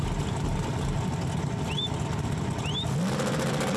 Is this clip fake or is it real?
real